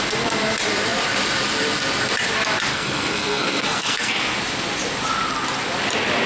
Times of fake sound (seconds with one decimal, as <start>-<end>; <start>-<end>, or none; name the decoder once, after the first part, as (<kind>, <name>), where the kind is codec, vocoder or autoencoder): 2.7-4.2 (codec, SNAC)